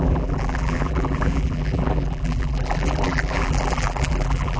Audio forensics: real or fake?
fake